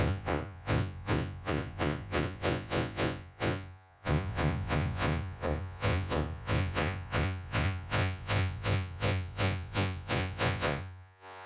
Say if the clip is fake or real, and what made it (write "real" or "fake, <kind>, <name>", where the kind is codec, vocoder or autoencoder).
fake, vocoder, Vocos